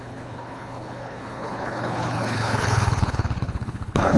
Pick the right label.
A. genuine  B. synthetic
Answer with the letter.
B